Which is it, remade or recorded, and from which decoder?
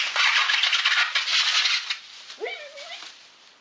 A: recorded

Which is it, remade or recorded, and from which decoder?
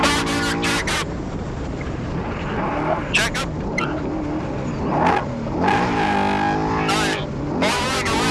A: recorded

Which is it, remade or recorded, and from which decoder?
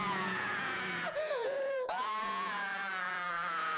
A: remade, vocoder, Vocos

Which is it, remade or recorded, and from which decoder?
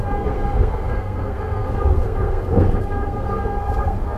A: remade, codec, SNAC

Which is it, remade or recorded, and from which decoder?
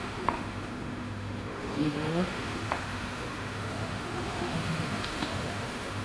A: remade, autoencoder, DAC-VAE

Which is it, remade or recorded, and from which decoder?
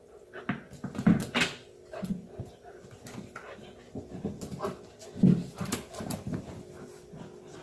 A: recorded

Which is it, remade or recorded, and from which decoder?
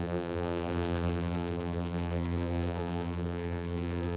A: remade, vocoder, BigVGAN v2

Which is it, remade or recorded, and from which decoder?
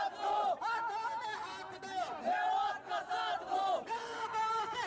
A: recorded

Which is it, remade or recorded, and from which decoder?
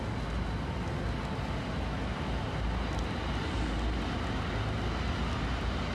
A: recorded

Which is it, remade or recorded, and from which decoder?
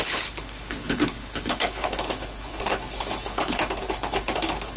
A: remade, codec, HILCodec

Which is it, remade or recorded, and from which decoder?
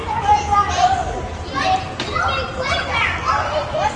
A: recorded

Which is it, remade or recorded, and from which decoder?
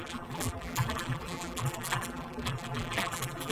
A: remade, vocoder, BigVGAN v2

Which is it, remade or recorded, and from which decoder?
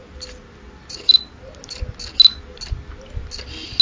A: recorded